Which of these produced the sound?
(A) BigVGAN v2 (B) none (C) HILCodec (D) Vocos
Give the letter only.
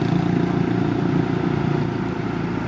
B